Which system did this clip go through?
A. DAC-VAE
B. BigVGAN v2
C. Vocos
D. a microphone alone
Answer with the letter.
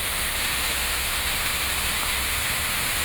A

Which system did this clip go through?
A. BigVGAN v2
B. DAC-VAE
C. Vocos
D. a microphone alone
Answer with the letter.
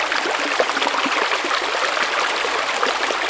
D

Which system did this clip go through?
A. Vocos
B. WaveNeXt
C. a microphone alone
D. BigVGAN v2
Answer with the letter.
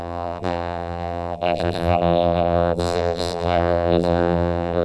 D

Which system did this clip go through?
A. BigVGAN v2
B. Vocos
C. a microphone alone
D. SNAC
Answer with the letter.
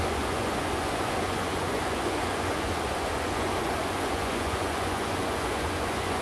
B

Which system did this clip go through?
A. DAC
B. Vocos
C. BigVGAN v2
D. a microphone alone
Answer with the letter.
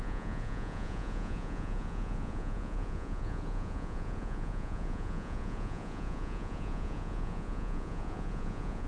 B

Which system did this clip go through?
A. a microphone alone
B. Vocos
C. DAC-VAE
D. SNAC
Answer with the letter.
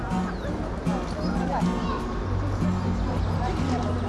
A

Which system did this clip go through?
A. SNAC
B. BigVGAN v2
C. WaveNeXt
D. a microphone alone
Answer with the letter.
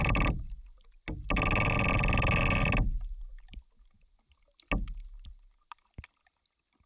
D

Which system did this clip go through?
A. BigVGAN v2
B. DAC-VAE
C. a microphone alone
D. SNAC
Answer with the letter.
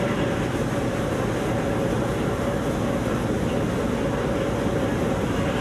C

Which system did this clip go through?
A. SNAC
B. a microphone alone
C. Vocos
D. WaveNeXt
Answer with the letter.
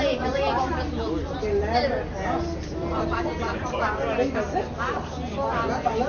B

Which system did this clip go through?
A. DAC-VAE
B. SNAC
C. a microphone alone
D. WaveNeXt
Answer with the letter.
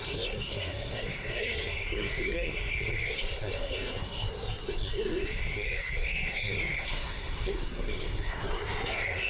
B